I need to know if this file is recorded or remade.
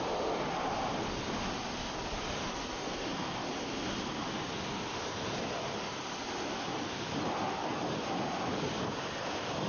recorded